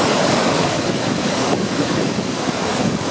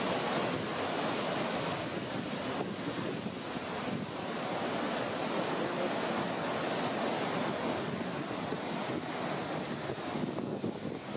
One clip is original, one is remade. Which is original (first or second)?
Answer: second